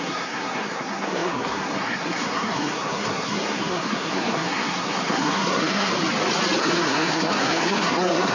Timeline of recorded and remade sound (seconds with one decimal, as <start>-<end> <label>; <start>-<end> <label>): 0.0-5.9 remade; 5.9-6.6 recorded; 6.6-8.3 remade